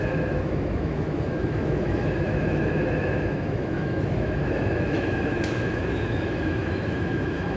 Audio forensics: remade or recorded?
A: remade